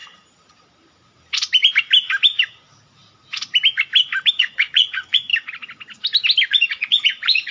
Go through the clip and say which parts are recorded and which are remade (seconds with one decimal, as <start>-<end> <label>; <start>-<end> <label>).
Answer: 0.0-4.3 recorded; 4.3-5.3 remade; 5.3-6.5 recorded; 6.5-7.5 remade